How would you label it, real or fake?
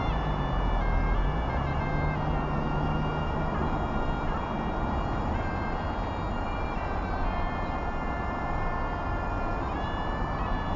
real